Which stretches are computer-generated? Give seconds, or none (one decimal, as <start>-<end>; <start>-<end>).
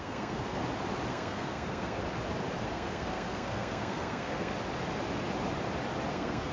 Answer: 0.0-0.6; 1.1-2.0; 2.6-4.5; 6.1-6.5